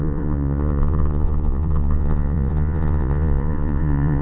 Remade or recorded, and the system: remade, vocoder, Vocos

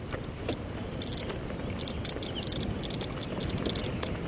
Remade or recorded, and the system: recorded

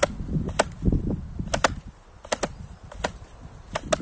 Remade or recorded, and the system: recorded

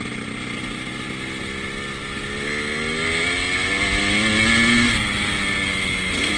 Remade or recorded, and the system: recorded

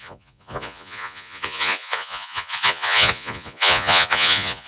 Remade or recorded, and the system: remade, vocoder, Vocos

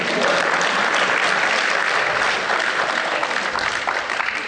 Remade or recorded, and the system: recorded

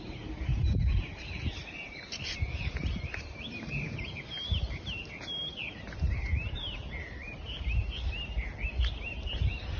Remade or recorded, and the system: remade, vocoder, BigVGAN v2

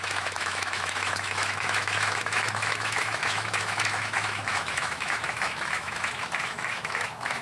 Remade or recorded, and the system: remade, autoencoder, DAC-VAE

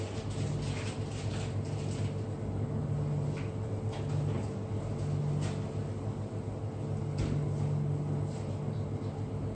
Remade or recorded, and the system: recorded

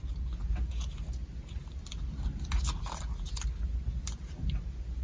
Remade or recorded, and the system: recorded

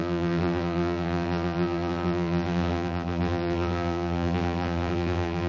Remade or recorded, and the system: remade, vocoder, BigVGAN v2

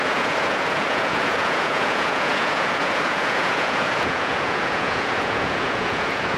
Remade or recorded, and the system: remade, vocoder, Vocos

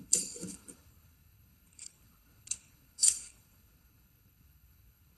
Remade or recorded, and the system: remade, codec, HILCodec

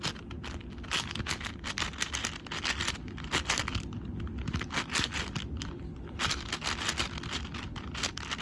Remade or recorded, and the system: recorded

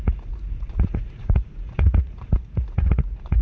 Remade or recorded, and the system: remade, vocoder, Vocos